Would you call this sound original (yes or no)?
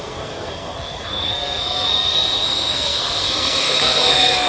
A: no